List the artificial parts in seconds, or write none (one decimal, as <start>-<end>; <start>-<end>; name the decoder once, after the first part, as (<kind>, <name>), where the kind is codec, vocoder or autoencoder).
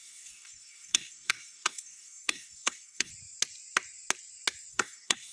0.0-3.1 (codec, SNAC); 4.7-5.3